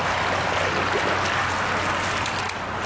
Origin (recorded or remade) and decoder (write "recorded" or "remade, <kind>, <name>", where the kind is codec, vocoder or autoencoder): recorded